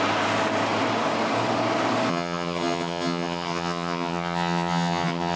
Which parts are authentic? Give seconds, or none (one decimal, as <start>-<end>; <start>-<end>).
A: 0.0-2.1